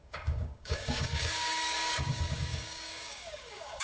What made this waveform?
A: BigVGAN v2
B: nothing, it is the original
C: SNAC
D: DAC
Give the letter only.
D